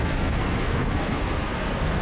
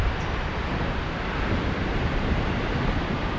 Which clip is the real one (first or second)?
second